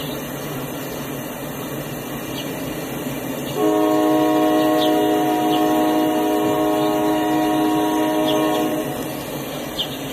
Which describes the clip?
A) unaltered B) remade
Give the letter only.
A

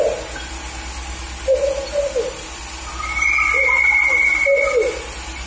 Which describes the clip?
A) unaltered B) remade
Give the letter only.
A